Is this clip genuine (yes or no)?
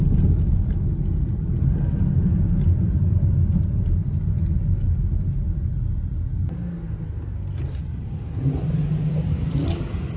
yes